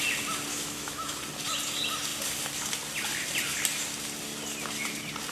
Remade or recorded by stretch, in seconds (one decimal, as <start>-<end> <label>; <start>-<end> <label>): 0.0-0.5 recorded; 0.5-1.2 remade; 1.2-5.3 recorded